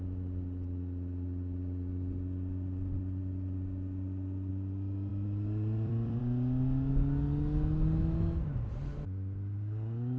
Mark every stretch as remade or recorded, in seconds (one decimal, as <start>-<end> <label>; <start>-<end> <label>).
0.0-5.1 recorded; 5.1-6.2 remade; 6.2-10.2 recorded